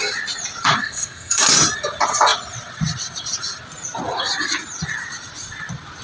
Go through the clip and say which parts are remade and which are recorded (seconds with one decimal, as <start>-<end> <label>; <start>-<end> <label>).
0.0-0.8 recorded; 0.8-1.4 remade; 1.4-6.0 recorded